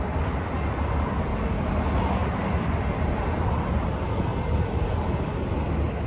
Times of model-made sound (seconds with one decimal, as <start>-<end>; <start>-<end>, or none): 2.2-3.9; 4.3-5.2